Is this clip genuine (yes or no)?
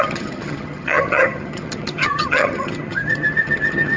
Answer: no